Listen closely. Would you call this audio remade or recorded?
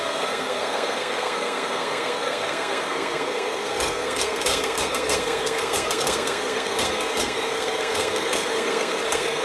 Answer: remade